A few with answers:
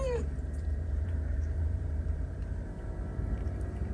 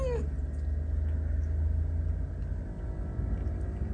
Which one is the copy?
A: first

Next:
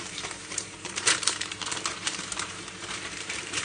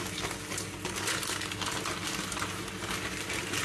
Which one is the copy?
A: first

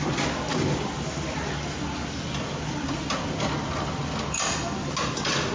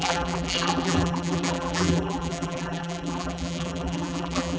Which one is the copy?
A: second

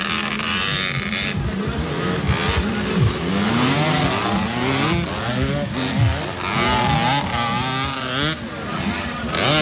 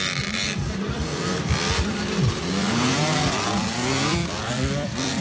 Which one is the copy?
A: second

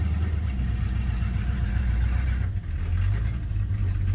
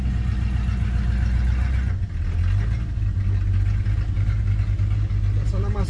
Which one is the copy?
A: first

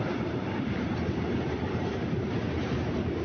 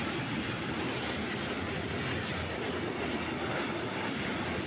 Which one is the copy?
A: first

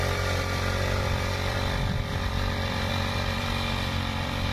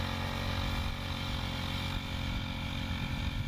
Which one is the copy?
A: first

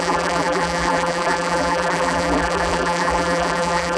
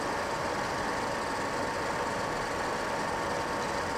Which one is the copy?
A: first